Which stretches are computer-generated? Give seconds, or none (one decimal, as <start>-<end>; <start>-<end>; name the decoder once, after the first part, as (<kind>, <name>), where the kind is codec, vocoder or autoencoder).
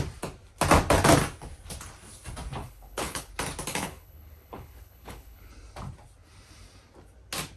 2.6-3.3 (codec, HILCodec); 3.7-5.5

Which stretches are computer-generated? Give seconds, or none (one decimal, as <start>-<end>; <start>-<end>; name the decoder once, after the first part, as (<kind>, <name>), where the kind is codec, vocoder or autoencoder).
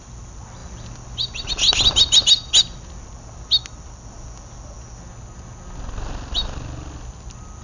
none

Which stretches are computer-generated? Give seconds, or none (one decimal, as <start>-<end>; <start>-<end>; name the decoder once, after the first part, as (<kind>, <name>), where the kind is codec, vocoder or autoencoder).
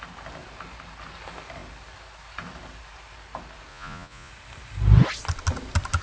3.7-4.3 (vocoder, Vocos)